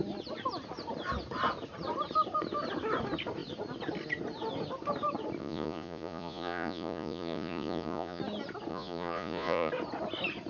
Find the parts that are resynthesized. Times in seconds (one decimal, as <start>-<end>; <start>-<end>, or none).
5.4-8.2; 8.7-9.7